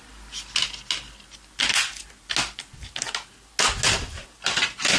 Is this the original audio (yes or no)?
yes